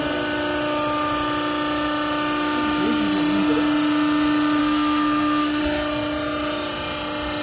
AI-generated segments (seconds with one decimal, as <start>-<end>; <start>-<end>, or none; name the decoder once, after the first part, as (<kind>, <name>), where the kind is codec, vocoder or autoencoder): 4.6-5.6 (codec, SNAC)